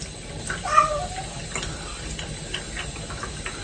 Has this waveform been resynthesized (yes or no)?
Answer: no